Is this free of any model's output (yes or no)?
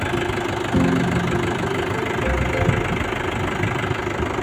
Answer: yes